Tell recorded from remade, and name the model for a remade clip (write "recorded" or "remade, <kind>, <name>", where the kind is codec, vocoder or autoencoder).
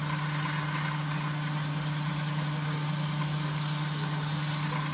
recorded